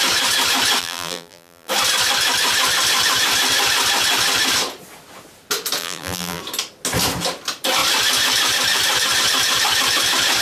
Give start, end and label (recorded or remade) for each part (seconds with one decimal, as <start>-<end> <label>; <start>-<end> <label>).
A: 0.0-0.8 recorded; 0.8-1.7 remade; 1.7-5.8 recorded; 5.8-6.4 remade; 6.4-10.4 recorded